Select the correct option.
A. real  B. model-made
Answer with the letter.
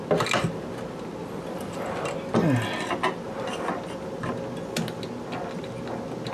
A